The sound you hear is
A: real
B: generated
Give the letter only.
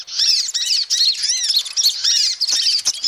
A